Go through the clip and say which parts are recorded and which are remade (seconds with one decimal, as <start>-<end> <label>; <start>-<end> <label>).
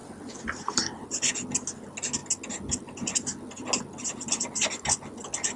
0.0-5.6 recorded